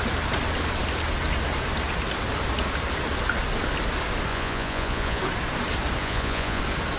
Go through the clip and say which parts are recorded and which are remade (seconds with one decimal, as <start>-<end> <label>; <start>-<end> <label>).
0.0-4.3 recorded; 4.3-5.2 remade; 5.2-6.0 recorded; 6.0-6.6 remade; 6.6-7.0 recorded